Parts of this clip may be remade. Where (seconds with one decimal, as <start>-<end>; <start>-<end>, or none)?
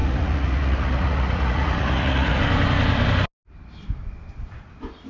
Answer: 0.0-2.4